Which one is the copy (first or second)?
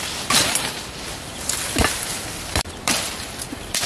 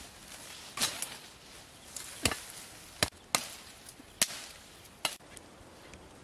first